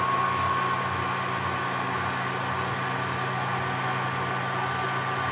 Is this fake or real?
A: real